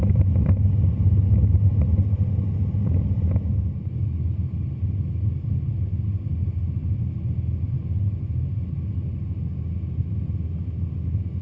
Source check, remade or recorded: recorded